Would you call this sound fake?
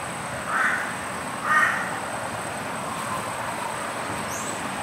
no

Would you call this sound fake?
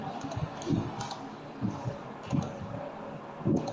no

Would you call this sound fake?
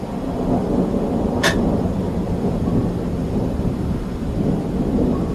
yes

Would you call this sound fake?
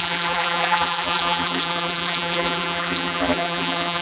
yes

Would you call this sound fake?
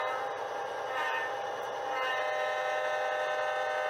no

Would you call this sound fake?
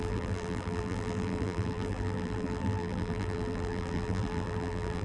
yes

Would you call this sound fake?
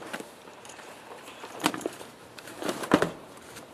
yes